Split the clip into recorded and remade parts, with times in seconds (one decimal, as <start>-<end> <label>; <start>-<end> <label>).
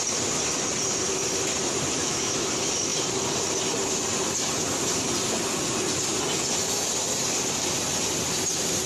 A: 0.0-2.0 recorded; 2.0-2.5 remade; 2.5-8.9 recorded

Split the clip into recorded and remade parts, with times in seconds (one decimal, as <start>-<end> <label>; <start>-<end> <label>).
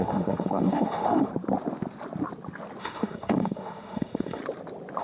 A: 0.0-1.3 remade; 1.3-2.8 recorded; 2.8-4.4 remade; 4.4-5.0 recorded